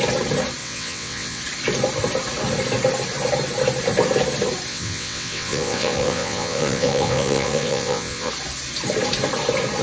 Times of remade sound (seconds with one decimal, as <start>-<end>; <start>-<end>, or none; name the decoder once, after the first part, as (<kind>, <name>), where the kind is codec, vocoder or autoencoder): 0.6-1.4 (vocoder, WaveNeXt); 4.7-8.3